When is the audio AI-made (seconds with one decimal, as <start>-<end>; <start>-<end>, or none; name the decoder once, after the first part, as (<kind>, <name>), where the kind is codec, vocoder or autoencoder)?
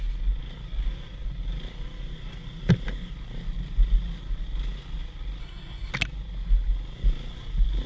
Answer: 5.4-5.9 (codec, SNAC)